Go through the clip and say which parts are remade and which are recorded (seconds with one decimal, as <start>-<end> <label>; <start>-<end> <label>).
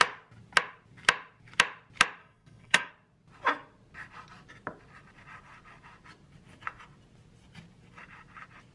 0.0-2.2 recorded; 2.2-2.9 remade; 2.9-8.7 recorded